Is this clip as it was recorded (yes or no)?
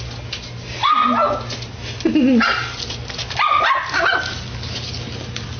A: yes